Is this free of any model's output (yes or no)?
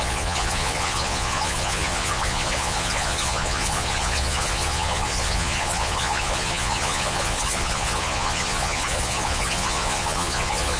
no